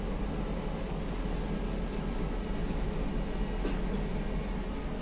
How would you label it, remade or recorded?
recorded